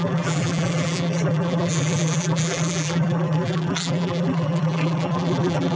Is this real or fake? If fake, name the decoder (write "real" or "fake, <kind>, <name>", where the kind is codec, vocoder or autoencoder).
fake, vocoder, BigVGAN v2